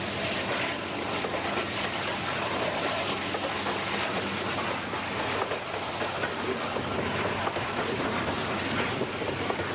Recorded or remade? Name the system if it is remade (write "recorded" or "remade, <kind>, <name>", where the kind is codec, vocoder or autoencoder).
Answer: recorded